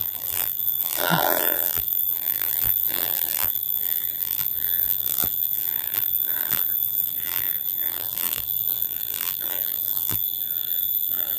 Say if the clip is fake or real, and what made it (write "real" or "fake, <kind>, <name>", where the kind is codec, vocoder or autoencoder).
fake, vocoder, BigVGAN v2